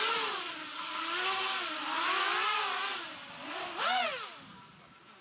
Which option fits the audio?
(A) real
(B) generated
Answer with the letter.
A